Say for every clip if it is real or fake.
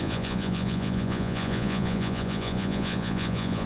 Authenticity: fake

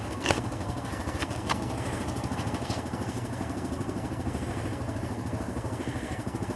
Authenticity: fake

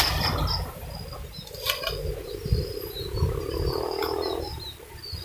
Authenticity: real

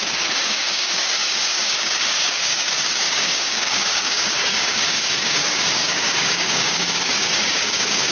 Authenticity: fake